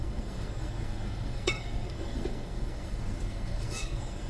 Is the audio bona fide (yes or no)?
no